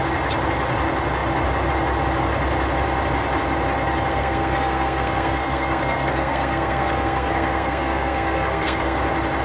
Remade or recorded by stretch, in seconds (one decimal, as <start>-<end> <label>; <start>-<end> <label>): 0.0-4.1 recorded; 4.1-9.0 remade; 9.0-9.4 recorded